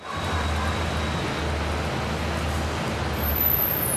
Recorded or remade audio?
recorded